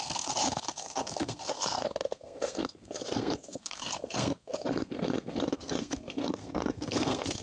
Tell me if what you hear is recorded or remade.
remade